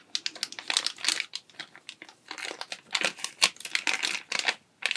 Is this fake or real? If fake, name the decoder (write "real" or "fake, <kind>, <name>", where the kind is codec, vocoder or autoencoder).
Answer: real